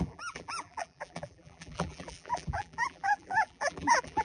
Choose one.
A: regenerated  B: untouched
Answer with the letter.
A